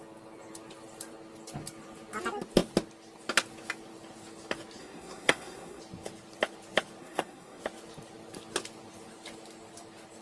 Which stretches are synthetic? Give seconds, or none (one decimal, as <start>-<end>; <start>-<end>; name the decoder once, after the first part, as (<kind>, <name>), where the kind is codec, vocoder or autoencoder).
4.8-5.8 (codec, SNAC); 7.0-7.6